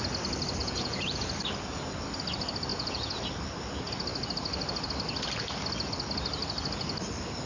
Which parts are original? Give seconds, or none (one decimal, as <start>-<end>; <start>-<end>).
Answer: 0.0-0.6; 1.2-2.7; 3.2-7.5